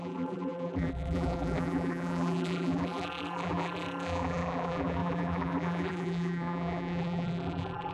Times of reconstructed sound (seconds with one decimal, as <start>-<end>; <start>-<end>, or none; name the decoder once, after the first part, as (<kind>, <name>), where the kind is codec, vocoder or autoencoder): 0.0-7.9 (vocoder, BigVGAN v2)